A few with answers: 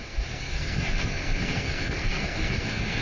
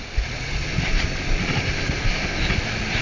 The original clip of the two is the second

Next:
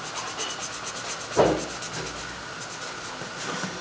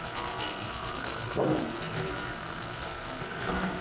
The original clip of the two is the first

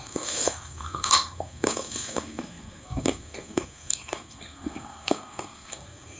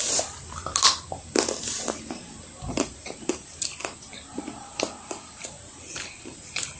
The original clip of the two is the second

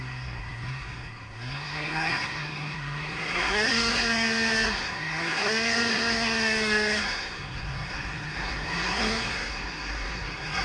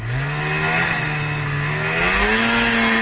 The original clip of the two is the second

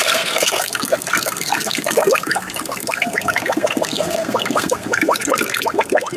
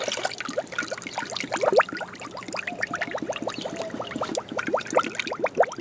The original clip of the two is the second